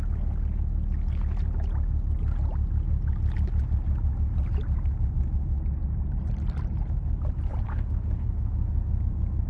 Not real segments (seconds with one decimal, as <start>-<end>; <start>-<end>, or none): 7.7-9.0

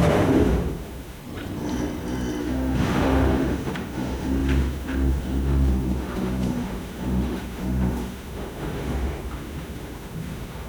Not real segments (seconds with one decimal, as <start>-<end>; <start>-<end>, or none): 0.0-1.2; 2.4-10.7

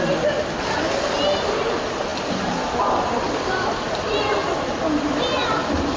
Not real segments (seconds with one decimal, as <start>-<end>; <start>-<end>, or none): none

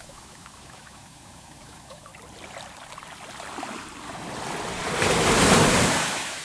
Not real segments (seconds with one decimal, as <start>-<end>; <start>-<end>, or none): 0.0-2.1; 5.9-6.4